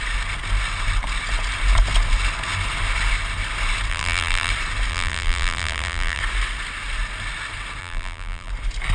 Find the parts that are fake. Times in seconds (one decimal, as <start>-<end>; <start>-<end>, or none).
3.9-4.5; 4.9-6.2; 7.8-8.5